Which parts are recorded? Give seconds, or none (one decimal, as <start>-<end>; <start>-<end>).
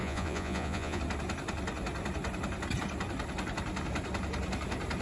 1.0-5.0